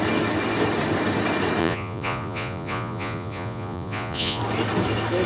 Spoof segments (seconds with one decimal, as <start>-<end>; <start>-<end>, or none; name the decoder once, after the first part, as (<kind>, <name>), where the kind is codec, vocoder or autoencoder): 1.6-4.4 (vocoder, Vocos)